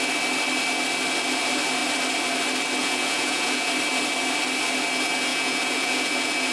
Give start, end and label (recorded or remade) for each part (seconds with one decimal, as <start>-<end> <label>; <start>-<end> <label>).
0.0-2.8 recorded; 2.8-3.7 remade; 3.7-5.3 recorded; 5.3-6.5 remade